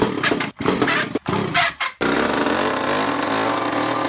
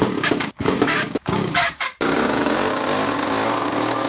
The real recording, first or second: first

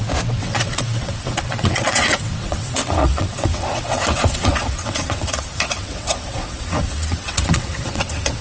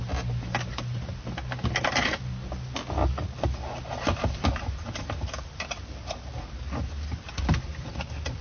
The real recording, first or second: second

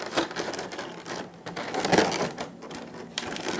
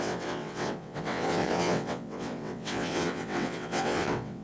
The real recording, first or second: first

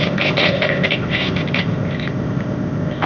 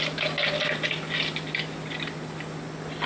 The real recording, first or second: second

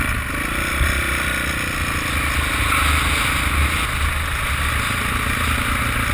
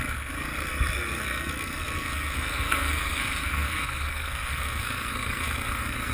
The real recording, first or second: first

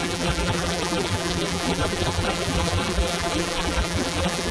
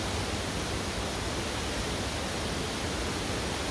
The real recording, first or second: second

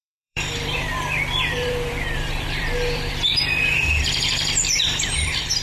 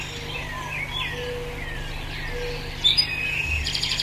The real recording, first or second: second